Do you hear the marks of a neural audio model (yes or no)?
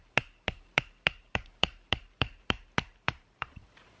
yes